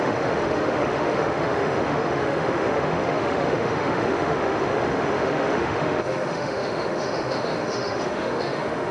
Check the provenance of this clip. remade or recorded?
remade